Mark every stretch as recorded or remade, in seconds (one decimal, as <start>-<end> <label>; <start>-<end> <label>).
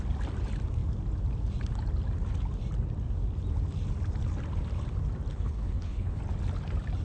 0.0-5.3 recorded; 5.3-6.2 remade; 6.2-7.0 recorded